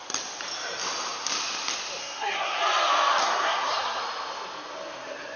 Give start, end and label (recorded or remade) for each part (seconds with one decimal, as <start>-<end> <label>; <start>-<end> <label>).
0.0-2.0 recorded; 2.0-2.6 remade; 2.6-3.2 recorded; 3.2-4.0 remade; 4.0-5.4 recorded